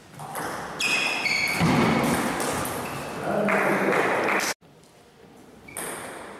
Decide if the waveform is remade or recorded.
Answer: recorded